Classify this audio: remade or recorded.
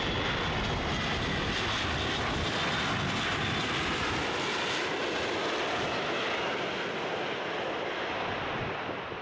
recorded